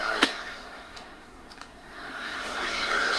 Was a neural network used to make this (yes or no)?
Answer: yes